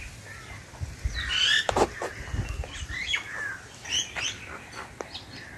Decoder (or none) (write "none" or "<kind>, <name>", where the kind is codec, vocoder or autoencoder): none